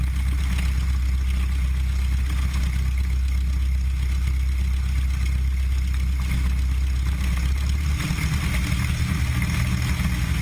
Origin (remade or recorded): recorded